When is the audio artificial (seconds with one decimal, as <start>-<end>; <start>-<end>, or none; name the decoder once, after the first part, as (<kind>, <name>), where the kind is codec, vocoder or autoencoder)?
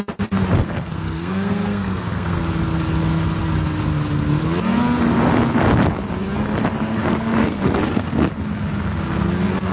0.6-2.4 (codec, SNAC); 6.9-8.2